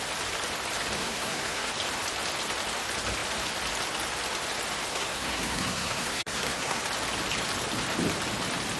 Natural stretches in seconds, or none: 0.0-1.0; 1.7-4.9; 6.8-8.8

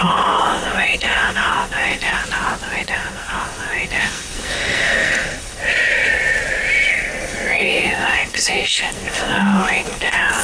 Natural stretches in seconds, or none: 2.2-2.9; 5.6-6.9

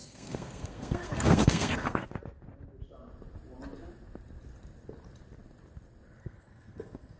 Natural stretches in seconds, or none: 2.1-6.2

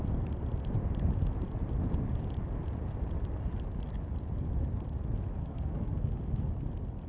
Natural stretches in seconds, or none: 0.0-5.4; 6.5-7.1

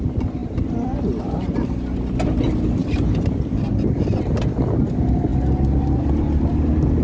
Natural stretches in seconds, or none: 0.0-7.0

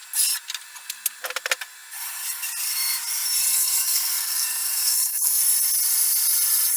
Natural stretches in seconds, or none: 0.0-3.5; 5.4-6.8